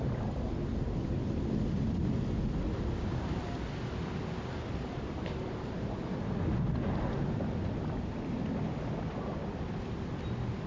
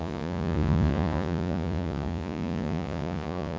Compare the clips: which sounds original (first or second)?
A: first